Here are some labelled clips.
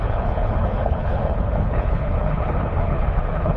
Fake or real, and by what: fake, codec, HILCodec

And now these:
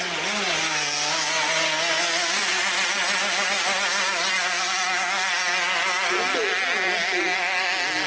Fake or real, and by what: real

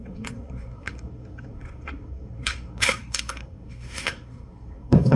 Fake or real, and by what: fake, codec, SNAC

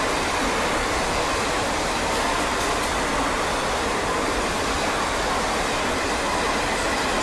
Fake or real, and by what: real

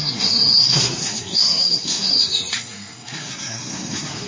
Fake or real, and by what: fake, codec, SNAC